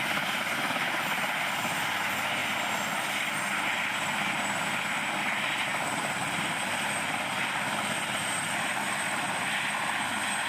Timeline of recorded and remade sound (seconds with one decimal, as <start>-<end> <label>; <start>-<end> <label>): 0.0-10.5 recorded